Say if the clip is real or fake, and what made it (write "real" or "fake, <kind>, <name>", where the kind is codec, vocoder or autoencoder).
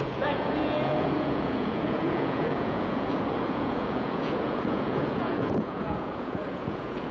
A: fake, vocoder, Vocos